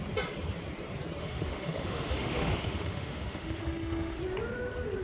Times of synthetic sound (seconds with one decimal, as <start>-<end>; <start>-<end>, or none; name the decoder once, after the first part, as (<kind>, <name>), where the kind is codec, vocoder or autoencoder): 1.2-4.2 (autoencoder, DAC-VAE)